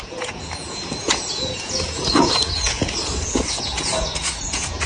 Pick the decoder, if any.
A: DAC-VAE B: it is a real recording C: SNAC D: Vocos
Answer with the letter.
D